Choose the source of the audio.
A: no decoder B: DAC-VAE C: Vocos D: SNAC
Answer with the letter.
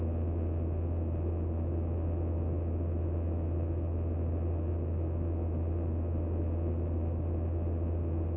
A